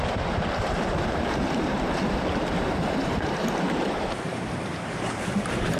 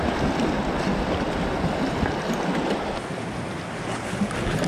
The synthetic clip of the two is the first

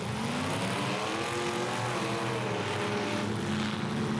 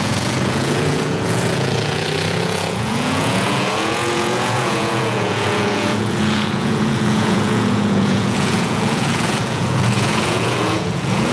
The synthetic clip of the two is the second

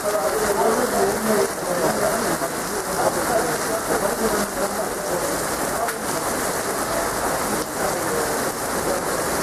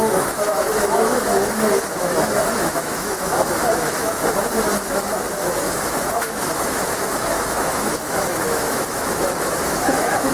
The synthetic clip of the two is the second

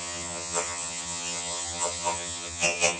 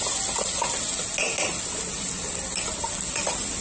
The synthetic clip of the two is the first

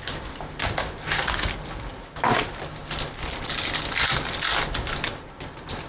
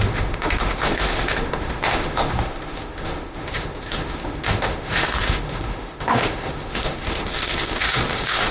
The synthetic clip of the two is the second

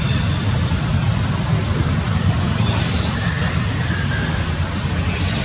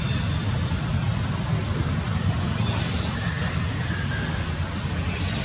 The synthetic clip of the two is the first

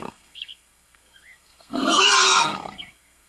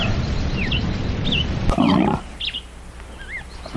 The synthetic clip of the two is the first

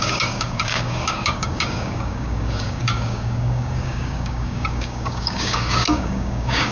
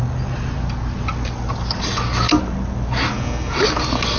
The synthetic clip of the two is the first